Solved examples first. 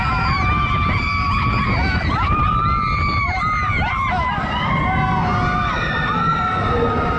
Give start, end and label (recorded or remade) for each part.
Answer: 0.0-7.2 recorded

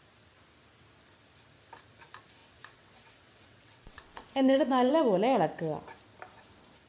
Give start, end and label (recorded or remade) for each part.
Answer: 0.0-2.4 recorded; 2.4-4.9 remade; 4.9-6.9 recorded

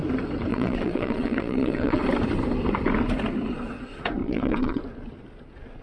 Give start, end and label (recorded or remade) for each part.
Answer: 0.0-0.5 recorded; 0.5-2.0 remade; 2.0-4.2 recorded; 4.2-4.8 remade; 4.8-5.8 recorded